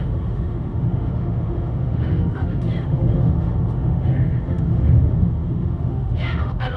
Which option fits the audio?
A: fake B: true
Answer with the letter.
A